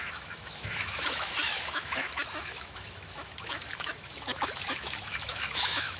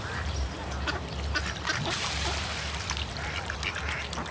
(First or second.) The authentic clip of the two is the second